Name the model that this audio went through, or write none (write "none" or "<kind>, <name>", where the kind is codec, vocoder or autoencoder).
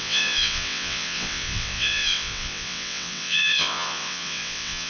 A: vocoder, WaveNeXt